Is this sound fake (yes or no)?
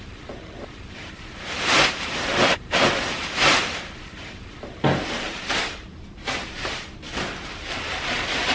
yes